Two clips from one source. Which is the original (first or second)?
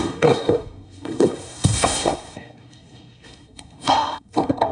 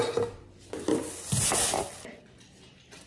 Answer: second